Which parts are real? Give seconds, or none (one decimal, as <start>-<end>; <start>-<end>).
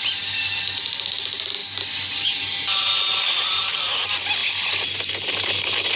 0.0-6.0